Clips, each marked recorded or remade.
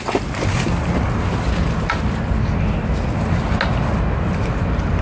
recorded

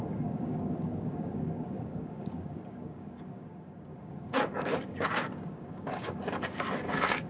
remade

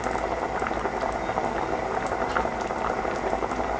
recorded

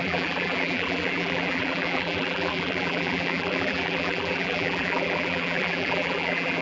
remade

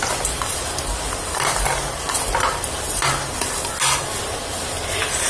recorded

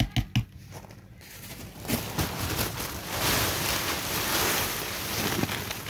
recorded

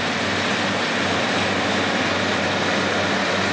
recorded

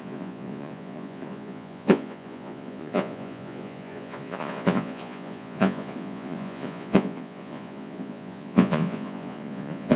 remade